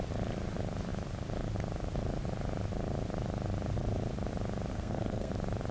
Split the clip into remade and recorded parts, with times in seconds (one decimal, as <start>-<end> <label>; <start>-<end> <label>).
0.0-4.7 recorded; 4.7-5.3 remade; 5.3-5.7 recorded